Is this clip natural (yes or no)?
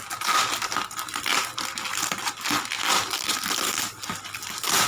yes